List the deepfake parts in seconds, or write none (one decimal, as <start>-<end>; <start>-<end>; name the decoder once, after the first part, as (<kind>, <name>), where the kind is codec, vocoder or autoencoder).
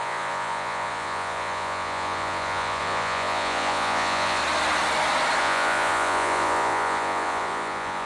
0.0-4.4 (vocoder, Vocos); 5.4-8.1